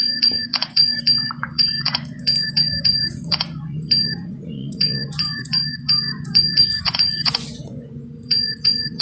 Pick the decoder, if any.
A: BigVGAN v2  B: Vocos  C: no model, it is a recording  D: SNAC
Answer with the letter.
B